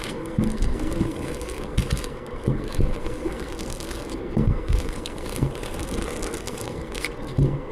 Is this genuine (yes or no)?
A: no